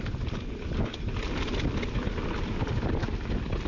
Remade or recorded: recorded